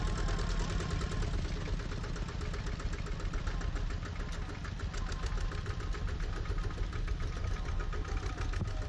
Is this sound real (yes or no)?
yes